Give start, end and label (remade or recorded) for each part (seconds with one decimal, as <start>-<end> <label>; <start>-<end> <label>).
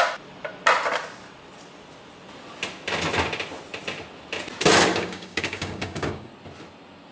0.0-4.9 recorded; 4.9-6.3 remade; 6.3-7.1 recorded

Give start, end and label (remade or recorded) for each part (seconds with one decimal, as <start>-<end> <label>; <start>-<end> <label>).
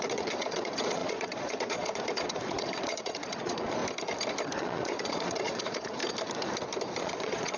0.0-3.8 remade; 3.8-4.6 recorded; 4.6-6.0 remade; 6.0-7.0 recorded; 7.0-7.6 remade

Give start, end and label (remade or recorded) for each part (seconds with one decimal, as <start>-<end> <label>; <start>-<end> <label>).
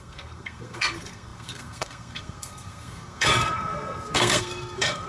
0.0-5.1 remade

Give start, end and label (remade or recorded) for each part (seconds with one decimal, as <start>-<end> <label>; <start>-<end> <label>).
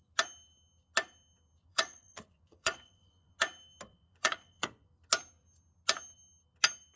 0.0-1.7 recorded; 1.7-3.3 remade; 3.3-3.9 recorded; 3.9-4.9 remade; 4.9-7.0 recorded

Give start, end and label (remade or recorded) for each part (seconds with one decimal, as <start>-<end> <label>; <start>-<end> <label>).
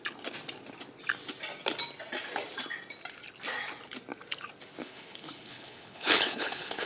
0.0-4.8 recorded; 4.8-6.9 remade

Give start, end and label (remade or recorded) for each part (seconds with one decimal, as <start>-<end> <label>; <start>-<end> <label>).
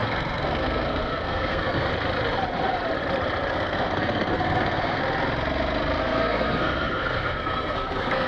0.0-1.9 remade; 1.9-3.5 recorded; 3.5-5.0 remade; 5.0-6.0 recorded; 6.0-8.3 remade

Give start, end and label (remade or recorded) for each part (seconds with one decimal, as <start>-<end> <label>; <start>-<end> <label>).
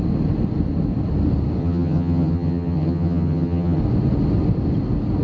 0.0-1.6 recorded; 1.6-3.8 remade; 3.8-5.2 recorded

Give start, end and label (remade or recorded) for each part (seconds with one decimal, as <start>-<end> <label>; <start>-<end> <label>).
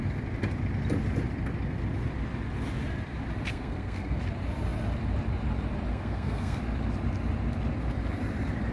0.0-3.5 recorded; 3.5-4.2 remade; 4.2-5.9 recorded; 5.9-6.6 remade; 6.6-8.7 recorded